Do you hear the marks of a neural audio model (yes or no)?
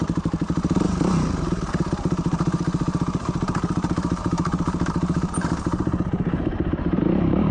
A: yes